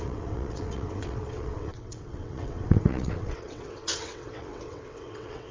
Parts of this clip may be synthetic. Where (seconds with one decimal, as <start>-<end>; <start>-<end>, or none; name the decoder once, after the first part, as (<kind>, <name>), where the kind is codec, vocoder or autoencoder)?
0.0-5.5 (vocoder, WaveNeXt)